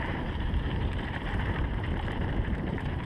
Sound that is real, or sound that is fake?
fake